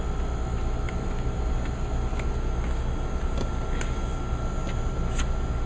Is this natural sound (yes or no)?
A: yes